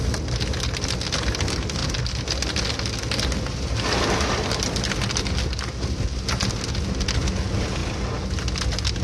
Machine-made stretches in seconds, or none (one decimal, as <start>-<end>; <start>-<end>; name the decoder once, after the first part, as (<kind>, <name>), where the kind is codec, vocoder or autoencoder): none